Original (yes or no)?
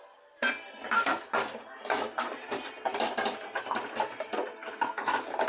yes